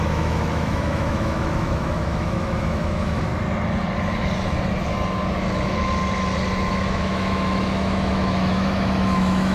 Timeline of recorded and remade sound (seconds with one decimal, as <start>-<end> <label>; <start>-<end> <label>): 0.0-3.3 remade; 3.3-6.7 recorded; 6.7-9.5 remade